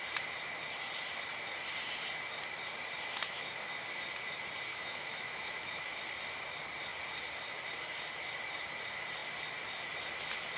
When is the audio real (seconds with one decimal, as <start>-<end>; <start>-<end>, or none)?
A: 0.0-4.7; 6.0-10.6